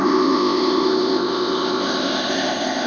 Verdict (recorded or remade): remade